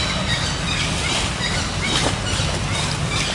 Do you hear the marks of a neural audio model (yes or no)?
no